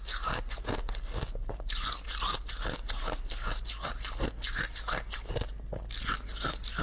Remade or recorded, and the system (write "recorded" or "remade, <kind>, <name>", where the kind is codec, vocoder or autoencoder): recorded